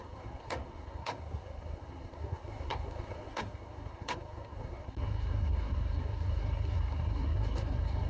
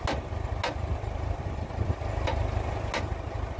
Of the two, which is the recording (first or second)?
second